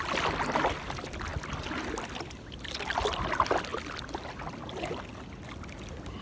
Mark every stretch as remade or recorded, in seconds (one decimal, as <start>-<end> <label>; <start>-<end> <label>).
0.0-6.2 recorded